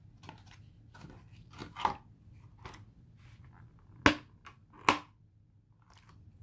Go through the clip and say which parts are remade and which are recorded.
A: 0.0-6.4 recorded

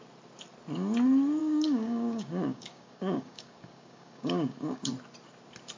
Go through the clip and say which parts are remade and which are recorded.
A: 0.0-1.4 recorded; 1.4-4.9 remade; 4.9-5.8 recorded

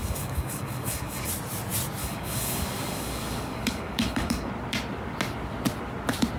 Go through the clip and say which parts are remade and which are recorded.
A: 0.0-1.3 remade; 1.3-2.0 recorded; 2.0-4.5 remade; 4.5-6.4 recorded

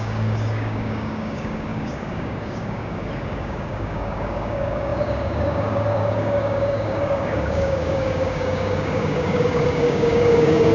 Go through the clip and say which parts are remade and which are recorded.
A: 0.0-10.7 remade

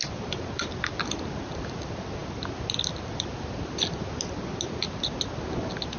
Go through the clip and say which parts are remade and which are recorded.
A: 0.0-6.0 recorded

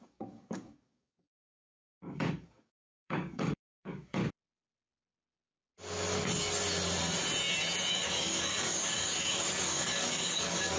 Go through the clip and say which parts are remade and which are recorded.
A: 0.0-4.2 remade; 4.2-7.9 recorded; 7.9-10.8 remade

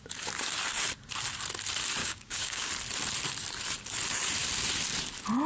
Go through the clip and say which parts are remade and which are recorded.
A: 0.0-2.0 recorded; 2.0-2.7 remade; 2.7-5.5 recorded

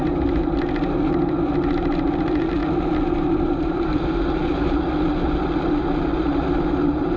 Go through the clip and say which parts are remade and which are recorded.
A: 0.0-7.2 recorded